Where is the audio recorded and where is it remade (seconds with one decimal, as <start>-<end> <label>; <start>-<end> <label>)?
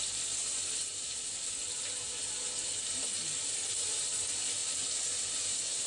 0.0-5.9 recorded